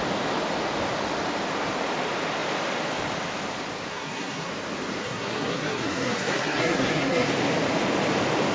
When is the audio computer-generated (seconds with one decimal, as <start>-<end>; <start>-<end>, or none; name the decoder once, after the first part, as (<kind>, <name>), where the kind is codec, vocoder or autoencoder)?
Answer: 3.9-4.5 (codec, SNAC); 5.0-7.3